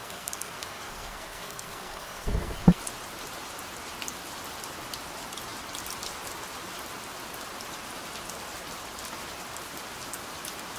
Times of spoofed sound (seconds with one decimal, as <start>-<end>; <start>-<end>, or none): 0.0-2.8

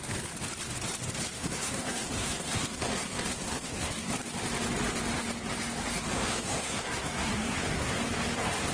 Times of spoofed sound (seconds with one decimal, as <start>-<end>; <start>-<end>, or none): 1.4-4.1; 6.3-8.0